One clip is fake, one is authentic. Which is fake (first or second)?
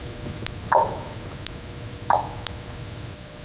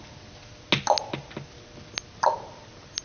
first